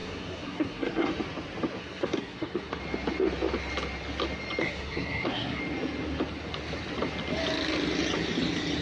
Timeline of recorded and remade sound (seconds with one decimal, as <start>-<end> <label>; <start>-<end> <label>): 0.0-1.1 remade; 1.1-1.8 recorded; 1.8-2.8 remade; 2.8-4.6 recorded; 4.6-5.6 remade; 5.6-8.8 recorded